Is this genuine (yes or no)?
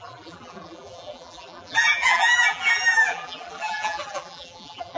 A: no